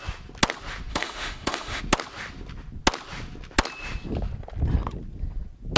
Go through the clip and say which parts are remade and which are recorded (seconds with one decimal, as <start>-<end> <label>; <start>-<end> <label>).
0.0-0.9 recorded; 0.9-1.8 remade; 1.8-5.8 recorded